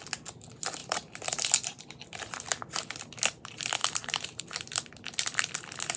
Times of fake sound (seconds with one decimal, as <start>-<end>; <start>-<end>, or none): 0.8-1.4; 3.8-4.4